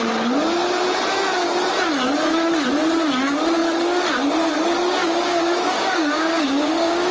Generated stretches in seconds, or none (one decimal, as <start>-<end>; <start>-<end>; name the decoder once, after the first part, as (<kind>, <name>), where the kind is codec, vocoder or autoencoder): 5.0-7.1 (codec, DAC)